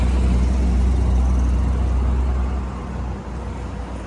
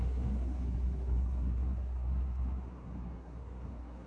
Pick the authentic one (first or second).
first